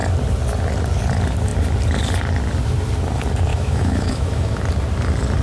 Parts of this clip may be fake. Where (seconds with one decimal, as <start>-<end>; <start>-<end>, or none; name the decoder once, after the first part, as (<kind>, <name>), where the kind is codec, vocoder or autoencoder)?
3.5-4.6 (autoencoder, DAC-VAE)